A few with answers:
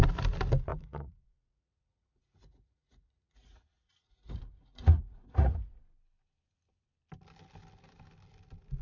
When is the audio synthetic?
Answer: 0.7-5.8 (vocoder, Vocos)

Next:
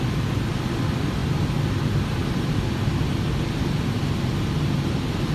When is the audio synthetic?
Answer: none

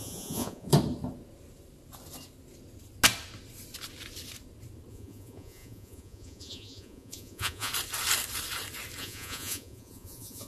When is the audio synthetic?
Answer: 0.0-0.7 (vocoder, Vocos); 4.9-7.7; 9.0-10.5

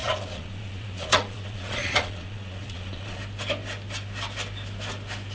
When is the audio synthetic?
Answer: 0.0-3.2 (vocoder, Vocos)

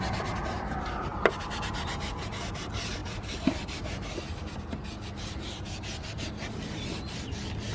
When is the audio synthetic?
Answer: none